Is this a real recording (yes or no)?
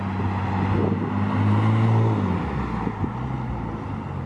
yes